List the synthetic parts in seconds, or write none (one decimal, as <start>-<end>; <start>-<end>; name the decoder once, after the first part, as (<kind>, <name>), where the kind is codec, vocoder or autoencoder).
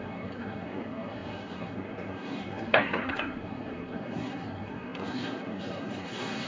0.0-6.5 (codec, SNAC)